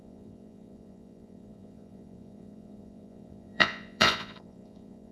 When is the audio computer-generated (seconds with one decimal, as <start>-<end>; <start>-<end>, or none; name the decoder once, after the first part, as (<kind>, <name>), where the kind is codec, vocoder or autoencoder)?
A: 0.0-5.1 (vocoder, Vocos)